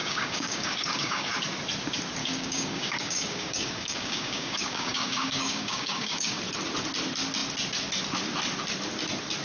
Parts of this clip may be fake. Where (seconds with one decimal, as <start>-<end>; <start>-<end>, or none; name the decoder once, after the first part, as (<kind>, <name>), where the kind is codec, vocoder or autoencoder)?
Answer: 0.0-1.3 (codec, DAC); 2.2-6.4